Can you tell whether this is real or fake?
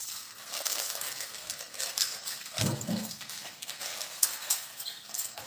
fake